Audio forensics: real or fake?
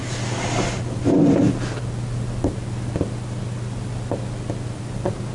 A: real